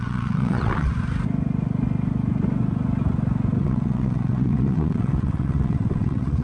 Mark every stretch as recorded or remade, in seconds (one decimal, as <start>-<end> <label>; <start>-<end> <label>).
0.0-0.9 remade; 0.9-3.6 recorded; 3.6-6.4 remade